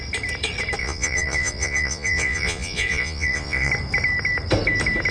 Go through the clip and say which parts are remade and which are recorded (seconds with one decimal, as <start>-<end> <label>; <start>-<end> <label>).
0.0-0.8 recorded; 0.8-3.7 remade; 3.7-5.1 recorded